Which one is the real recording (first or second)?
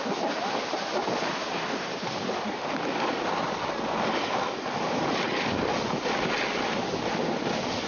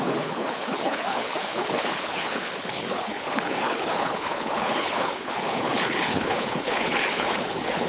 first